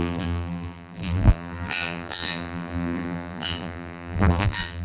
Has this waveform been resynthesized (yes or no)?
yes